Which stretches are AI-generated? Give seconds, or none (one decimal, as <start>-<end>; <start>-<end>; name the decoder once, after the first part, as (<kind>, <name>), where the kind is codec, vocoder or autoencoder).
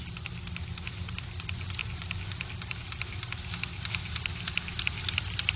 none